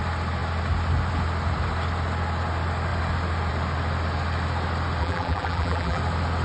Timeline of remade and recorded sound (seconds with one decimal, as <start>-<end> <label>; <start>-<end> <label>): 0.0-5.0 recorded; 5.0-6.0 remade; 6.0-6.4 recorded